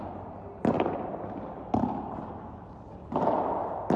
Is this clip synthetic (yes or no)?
no